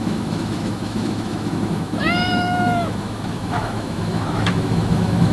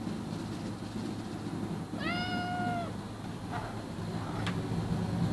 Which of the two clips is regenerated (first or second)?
first